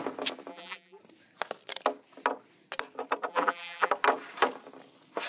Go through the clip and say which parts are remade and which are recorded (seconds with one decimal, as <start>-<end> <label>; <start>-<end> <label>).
0.0-0.5 recorded; 0.5-1.0 remade; 1.0-3.3 recorded; 3.3-3.9 remade; 3.9-5.3 recorded